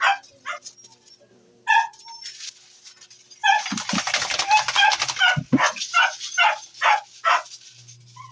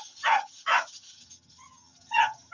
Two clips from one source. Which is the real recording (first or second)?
first